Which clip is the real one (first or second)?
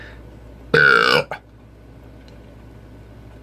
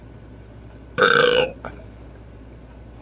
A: first